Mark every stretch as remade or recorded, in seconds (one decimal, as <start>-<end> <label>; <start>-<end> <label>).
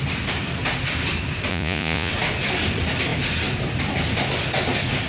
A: 0.0-1.5 recorded; 1.5-2.1 remade; 2.1-5.1 recorded